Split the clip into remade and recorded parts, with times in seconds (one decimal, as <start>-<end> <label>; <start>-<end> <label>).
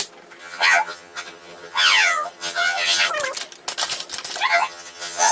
0.0-0.4 recorded; 0.4-3.1 remade; 3.1-4.5 recorded; 4.5-5.3 remade